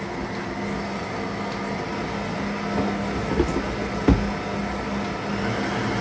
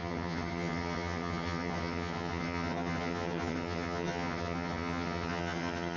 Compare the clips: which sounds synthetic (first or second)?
second